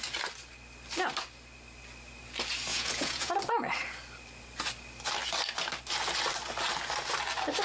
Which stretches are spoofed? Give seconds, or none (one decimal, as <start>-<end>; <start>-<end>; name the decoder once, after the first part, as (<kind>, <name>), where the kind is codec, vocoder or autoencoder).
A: 2.7-3.3 (vocoder, Vocos)